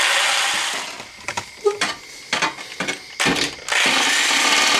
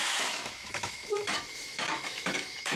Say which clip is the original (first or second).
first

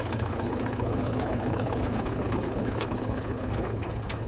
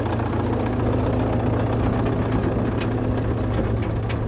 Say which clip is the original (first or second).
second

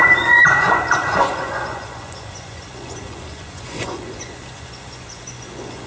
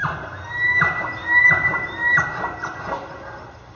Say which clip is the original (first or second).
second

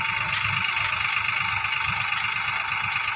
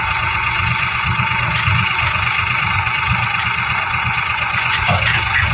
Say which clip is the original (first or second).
first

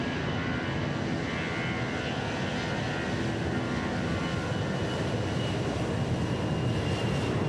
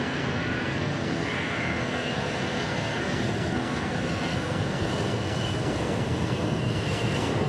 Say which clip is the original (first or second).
first